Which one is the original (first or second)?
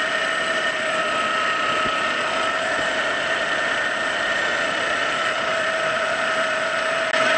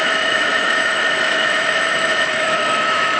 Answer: first